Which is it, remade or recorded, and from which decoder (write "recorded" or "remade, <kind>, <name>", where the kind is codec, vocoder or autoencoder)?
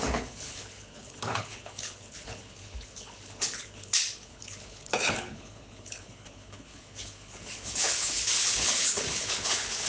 remade, codec, HILCodec